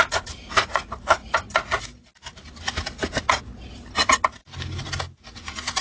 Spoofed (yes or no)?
no